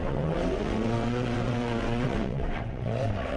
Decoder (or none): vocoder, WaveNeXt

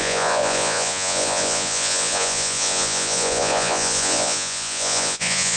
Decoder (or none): vocoder, Vocos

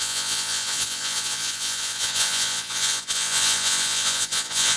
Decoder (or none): vocoder, Vocos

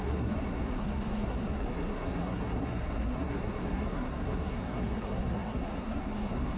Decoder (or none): codec, SNAC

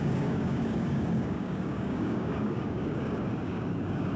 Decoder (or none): codec, DAC